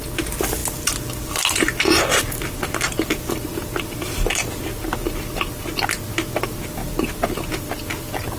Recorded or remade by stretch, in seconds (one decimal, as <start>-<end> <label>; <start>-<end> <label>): 0.0-8.4 recorded